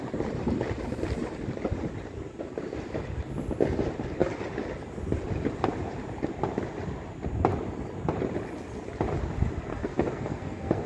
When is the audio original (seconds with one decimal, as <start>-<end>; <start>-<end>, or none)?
0.0-9.7